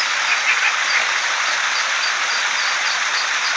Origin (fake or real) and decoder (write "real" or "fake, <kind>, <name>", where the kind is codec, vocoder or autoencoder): real